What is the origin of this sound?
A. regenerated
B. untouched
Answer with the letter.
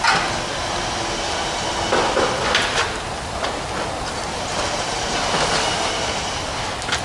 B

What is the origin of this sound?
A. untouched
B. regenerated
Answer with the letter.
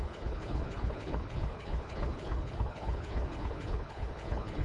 B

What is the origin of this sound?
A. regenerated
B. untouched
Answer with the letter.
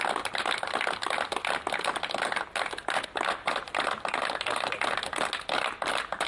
B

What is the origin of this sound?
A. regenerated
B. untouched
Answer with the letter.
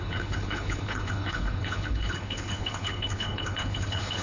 A